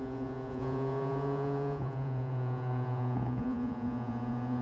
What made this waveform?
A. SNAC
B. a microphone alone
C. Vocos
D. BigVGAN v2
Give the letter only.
C